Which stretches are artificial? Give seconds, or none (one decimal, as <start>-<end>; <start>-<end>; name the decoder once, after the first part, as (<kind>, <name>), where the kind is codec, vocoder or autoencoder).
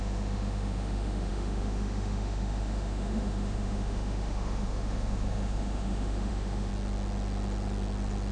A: 0.0-6.7 (autoencoder, DAC-VAE)